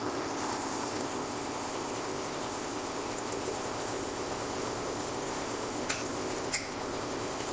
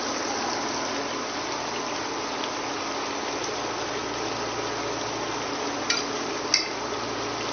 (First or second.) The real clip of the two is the second